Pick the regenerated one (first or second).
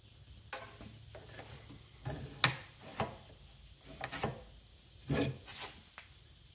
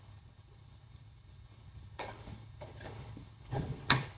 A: second